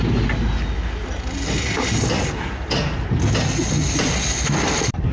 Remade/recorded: recorded